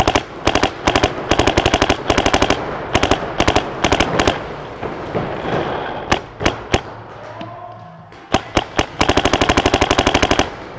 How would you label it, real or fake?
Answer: real